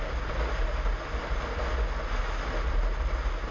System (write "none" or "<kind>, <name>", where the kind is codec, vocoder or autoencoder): none